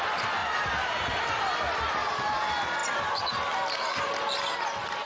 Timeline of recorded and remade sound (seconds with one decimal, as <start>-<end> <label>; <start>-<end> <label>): 0.0-5.1 recorded